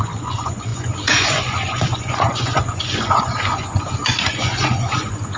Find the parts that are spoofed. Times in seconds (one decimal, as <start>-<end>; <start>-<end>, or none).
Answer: 0.0-5.4